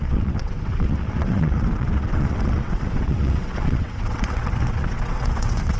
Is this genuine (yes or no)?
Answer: no